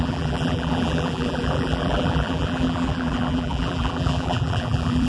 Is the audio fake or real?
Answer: fake